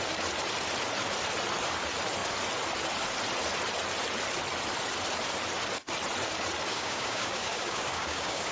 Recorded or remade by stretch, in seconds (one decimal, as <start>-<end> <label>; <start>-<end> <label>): 0.0-6.7 recorded; 6.7-8.5 remade